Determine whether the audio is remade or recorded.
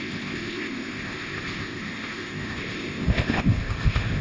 remade